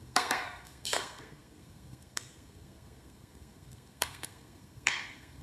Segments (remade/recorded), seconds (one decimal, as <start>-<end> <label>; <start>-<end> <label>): 0.0-5.4 remade